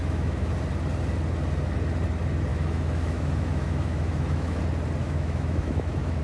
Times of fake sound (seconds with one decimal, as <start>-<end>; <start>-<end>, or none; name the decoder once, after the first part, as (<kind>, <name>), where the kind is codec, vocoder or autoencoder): 0.0-0.5 (autoencoder, DAC-VAE); 2.5-4.6; 5.0-6.2